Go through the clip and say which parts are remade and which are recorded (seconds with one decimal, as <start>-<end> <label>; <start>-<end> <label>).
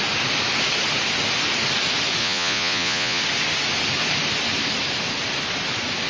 0.0-2.2 recorded; 2.2-3.2 remade; 3.2-6.1 recorded